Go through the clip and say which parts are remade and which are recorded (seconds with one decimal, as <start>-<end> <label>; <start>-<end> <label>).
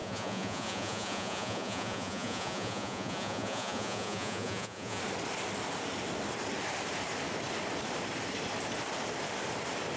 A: 0.0-5.0 remade; 5.0-10.0 recorded